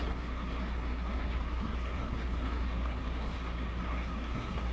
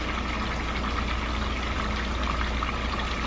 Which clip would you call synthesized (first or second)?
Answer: first